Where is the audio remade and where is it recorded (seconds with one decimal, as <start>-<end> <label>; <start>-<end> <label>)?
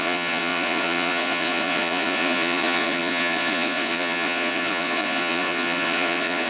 0.0-6.5 remade